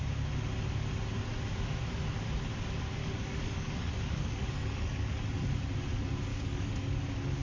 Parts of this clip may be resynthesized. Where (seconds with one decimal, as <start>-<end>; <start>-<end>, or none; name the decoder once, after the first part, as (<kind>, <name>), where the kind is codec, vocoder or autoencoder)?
3.0-5.0 (codec, DAC); 6.3-7.0